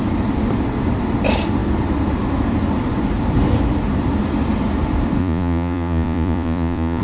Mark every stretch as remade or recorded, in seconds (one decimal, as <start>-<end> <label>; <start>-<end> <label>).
0.0-5.2 recorded; 5.2-7.0 remade